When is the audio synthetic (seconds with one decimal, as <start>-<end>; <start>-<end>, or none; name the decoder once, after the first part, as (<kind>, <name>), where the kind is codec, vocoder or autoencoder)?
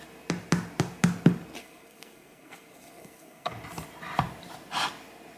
1.6-3.5 (codec, SNAC)